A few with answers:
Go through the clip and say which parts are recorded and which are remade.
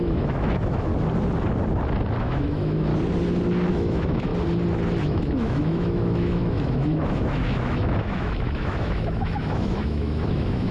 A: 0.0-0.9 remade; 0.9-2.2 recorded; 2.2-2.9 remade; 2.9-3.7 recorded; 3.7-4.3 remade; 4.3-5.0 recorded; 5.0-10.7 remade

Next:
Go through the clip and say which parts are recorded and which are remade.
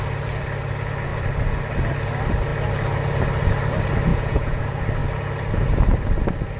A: 0.0-4.1 recorded; 4.1-4.6 remade; 4.6-6.6 recorded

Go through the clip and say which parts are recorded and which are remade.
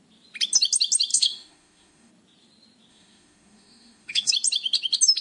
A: 0.0-1.1 recorded; 1.1-2.1 remade; 2.1-2.9 recorded; 2.9-4.3 remade; 4.3-5.2 recorded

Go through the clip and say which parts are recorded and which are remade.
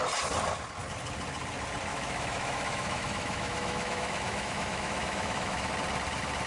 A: 0.0-1.9 recorded; 1.9-5.7 remade; 5.7-6.5 recorded